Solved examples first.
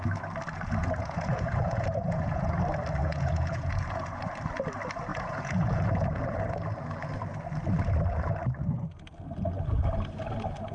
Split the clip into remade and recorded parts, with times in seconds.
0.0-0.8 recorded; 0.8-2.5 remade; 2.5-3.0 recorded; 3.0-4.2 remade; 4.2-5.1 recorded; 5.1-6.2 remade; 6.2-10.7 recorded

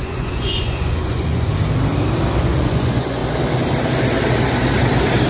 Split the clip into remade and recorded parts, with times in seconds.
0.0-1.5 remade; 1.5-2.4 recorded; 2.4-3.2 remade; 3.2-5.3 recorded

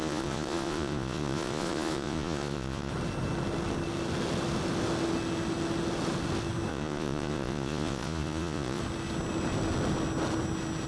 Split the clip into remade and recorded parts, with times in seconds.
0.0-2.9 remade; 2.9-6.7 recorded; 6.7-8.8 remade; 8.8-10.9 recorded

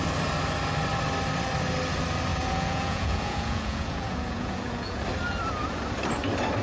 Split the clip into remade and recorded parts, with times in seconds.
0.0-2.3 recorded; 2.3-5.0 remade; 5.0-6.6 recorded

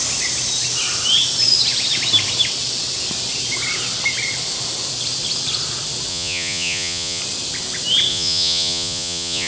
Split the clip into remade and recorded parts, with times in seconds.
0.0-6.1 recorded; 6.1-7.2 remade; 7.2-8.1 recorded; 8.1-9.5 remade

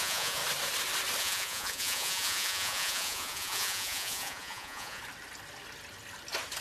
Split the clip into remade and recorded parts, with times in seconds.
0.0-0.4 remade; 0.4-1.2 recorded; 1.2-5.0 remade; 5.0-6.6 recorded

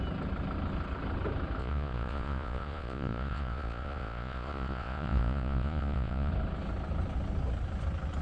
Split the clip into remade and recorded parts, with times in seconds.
0.0-1.6 recorded; 1.6-6.3 remade; 6.3-8.2 recorded